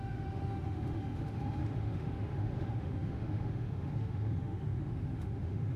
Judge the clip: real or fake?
fake